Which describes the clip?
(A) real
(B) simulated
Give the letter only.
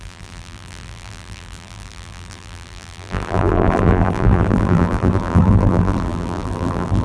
B